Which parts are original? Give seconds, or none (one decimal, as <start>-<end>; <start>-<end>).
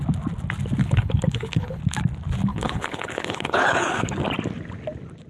0.0-0.8; 1.8-2.5; 4.2-5.3